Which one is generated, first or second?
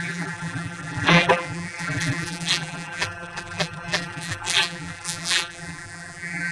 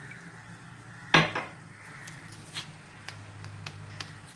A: first